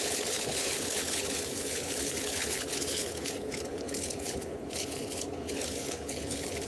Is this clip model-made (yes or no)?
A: yes